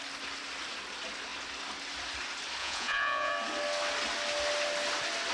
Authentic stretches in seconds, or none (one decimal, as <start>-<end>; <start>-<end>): 0.0-2.6; 3.3-5.3